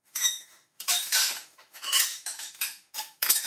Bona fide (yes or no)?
no